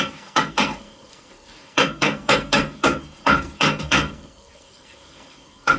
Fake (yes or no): yes